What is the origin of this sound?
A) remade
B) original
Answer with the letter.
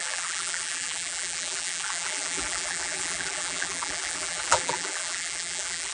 A